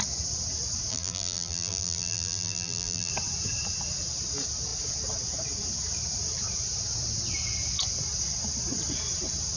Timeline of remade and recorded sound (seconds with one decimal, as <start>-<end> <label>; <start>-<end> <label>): 0.0-0.9 recorded; 0.9-3.1 remade; 3.1-9.6 recorded